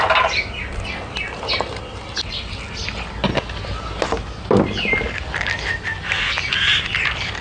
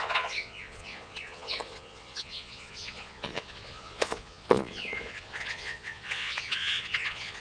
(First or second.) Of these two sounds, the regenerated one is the second